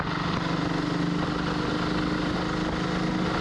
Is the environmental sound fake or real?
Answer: real